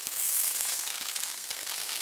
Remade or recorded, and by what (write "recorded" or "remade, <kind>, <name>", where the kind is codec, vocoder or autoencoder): remade, codec, SNAC